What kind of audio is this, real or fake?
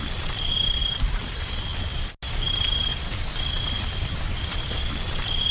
real